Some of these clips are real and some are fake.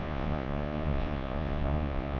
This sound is fake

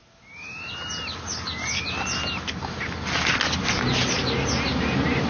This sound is real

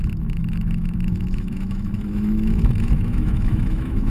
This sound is fake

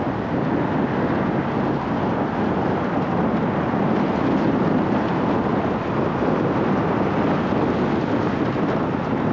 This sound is real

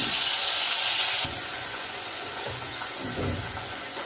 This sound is fake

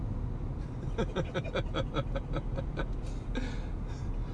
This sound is real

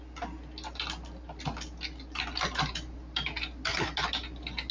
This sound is real